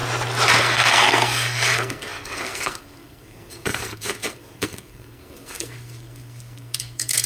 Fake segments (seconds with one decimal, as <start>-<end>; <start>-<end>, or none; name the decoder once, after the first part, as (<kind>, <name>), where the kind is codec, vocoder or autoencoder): 0.6-7.3 (codec, SNAC)